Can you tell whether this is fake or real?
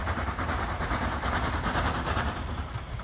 fake